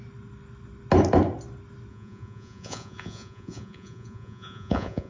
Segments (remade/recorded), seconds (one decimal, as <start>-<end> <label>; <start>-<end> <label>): 0.0-1.9 recorded; 1.9-5.1 remade